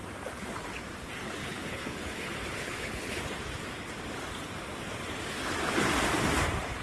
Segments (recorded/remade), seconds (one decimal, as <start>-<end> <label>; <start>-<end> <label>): 0.0-1.4 recorded; 1.4-3.2 remade; 3.2-6.8 recorded